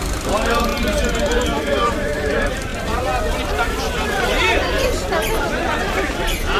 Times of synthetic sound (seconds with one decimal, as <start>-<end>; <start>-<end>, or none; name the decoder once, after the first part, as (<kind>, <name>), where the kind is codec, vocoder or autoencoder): 0.0-2.7 (vocoder, BigVGAN v2); 3.6-6.6